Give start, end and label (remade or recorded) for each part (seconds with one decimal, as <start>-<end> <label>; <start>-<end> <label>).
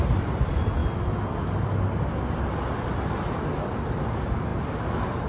0.0-5.3 recorded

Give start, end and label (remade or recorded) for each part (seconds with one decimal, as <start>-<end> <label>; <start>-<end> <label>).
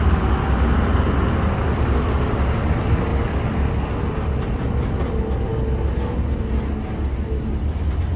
0.0-8.2 recorded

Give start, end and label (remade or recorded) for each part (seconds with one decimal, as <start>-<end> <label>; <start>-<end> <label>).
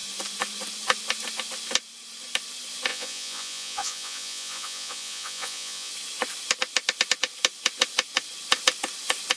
0.0-2.9 recorded; 2.9-5.9 remade; 5.9-9.4 recorded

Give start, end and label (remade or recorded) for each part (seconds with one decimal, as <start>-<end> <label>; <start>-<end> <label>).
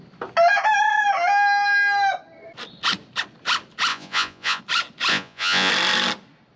0.0-3.9 recorded; 3.9-4.6 remade; 4.6-5.1 recorded; 5.1-5.7 remade; 5.7-6.6 recorded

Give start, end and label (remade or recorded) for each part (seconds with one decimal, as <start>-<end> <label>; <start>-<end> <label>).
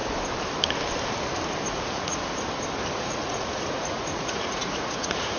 0.0-1.7 recorded; 1.7-2.1 remade; 2.1-3.0 recorded; 3.0-5.4 remade